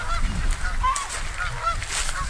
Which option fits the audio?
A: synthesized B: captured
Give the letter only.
B